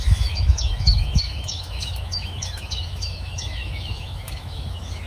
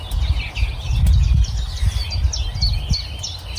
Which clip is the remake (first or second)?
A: first